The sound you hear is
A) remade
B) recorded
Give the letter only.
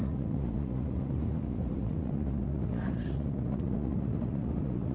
A